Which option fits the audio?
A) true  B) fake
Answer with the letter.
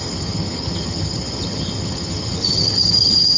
B